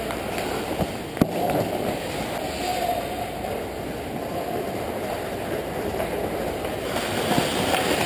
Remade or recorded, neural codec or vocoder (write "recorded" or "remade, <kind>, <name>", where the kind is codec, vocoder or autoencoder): recorded